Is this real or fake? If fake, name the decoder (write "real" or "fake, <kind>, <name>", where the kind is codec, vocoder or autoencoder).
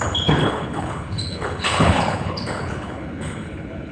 fake, codec, HILCodec